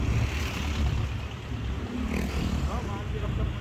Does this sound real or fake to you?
real